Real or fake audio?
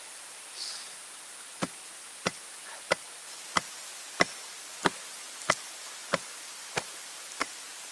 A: real